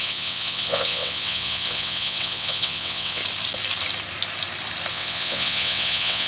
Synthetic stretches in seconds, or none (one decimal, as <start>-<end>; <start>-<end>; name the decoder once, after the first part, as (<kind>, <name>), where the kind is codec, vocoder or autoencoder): 0.0-3.2 (vocoder, WaveNeXt); 4.9-6.3

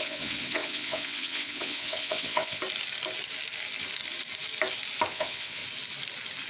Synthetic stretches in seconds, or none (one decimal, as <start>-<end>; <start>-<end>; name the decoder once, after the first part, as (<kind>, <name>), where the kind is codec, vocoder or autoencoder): 0.0-2.6 (vocoder, WaveNeXt); 5.1-5.6

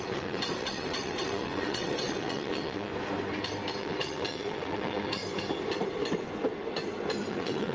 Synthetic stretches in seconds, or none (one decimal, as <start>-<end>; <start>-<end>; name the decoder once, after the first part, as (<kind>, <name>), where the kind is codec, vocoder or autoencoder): 0.0-2.9 (vocoder, WaveNeXt); 3.8-5.2; 7.3-7.7

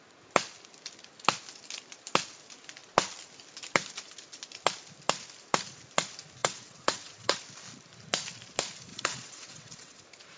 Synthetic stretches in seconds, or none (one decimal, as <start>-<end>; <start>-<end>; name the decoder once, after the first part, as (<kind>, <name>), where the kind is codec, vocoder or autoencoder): 6.4-7.4 (vocoder, WaveNeXt); 8.9-10.0

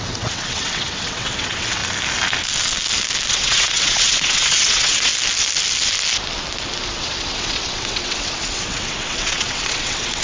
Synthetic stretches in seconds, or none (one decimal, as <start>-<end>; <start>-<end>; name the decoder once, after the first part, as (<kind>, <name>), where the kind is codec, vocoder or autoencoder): 0.0-1.8 (vocoder, WaveNeXt); 3.3-5.1; 6.9-10.2

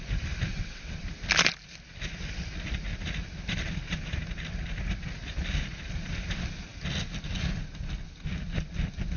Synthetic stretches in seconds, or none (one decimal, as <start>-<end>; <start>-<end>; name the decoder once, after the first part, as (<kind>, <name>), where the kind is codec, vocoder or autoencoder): 0.5-1.0 (vocoder, WaveNeXt)

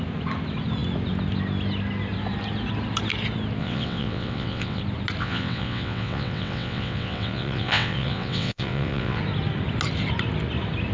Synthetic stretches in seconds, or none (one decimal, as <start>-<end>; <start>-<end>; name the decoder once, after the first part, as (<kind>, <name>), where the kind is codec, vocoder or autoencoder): 3.6-4.8 (vocoder, WaveNeXt); 5.2-9.2

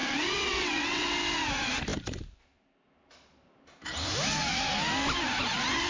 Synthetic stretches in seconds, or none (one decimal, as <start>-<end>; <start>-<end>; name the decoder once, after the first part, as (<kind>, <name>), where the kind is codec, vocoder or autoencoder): 0.0-1.1 (vocoder, WaveNeXt)